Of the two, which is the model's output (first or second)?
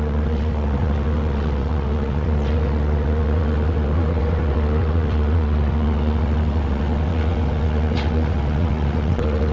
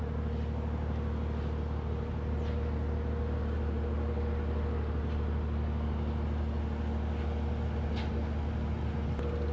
first